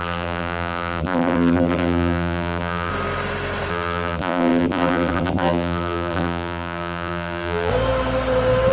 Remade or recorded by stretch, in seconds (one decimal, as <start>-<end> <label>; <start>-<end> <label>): 0.0-2.9 remade; 2.9-3.7 recorded; 3.7-7.7 remade; 7.7-8.7 recorded